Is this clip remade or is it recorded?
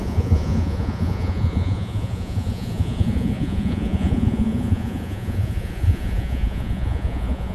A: remade